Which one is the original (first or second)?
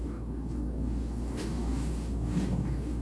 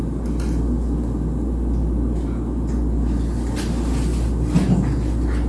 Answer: second